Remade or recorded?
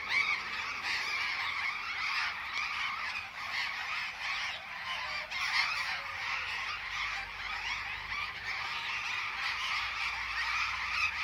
recorded